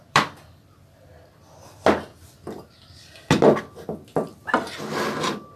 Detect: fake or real real